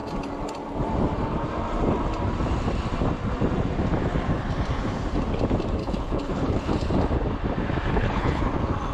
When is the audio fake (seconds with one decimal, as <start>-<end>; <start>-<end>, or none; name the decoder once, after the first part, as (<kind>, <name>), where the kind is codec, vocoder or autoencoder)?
5.8-6.7 (codec, HILCodec); 7.9-8.4